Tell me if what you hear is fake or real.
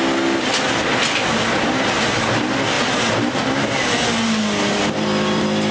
real